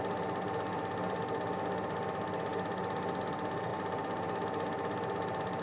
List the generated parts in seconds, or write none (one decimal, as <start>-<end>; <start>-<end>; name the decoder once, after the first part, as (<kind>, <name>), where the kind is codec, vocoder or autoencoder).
2.5-3.3 (vocoder, BigVGAN v2); 3.7-5.6